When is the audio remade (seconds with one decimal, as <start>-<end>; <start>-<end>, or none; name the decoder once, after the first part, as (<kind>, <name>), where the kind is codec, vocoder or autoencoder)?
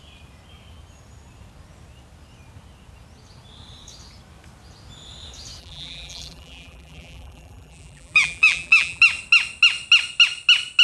5.6-9.0 (vocoder, BigVGAN v2)